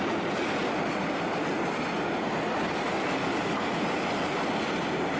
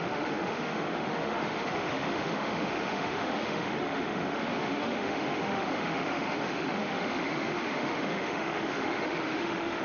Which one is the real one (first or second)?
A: first